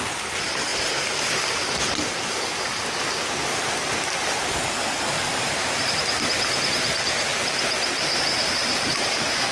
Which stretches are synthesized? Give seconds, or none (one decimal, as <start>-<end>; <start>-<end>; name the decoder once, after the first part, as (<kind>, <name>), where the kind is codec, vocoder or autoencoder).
none